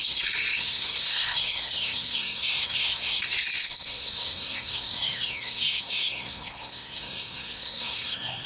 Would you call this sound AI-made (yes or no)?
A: yes